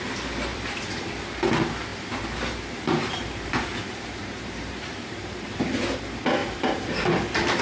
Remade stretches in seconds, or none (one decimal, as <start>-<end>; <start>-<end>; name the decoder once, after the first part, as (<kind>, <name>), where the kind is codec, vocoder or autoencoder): 0.5-1.1 (vocoder, BigVGAN v2); 1.9-6.0; 6.4-7.6